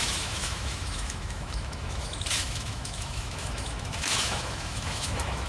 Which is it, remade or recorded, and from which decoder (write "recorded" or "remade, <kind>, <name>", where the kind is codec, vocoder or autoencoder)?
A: remade, autoencoder, DAC-VAE